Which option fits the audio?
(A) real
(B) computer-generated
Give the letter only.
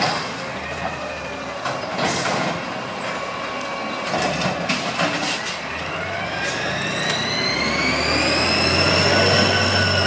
B